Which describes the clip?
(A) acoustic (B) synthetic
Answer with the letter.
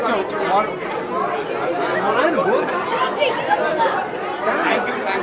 A